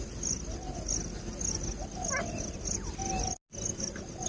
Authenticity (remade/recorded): recorded